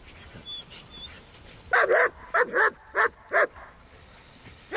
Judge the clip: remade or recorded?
recorded